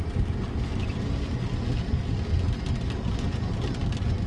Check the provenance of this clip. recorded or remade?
recorded